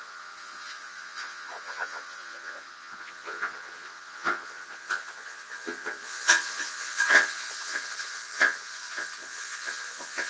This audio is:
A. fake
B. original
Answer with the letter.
A